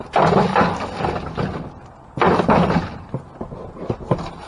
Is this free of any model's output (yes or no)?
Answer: yes